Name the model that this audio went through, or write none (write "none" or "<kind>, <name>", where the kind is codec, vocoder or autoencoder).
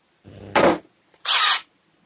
none